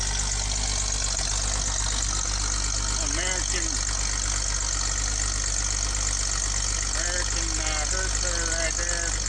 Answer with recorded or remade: recorded